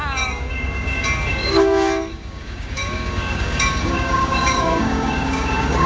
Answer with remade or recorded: remade